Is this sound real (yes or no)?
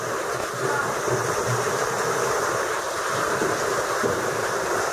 no